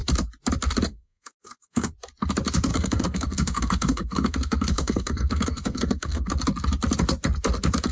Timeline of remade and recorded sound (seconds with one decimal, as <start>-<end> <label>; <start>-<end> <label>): 0.0-0.9 recorded; 0.9-1.9 remade; 1.9-2.7 recorded; 2.7-6.3 remade; 6.3-7.9 recorded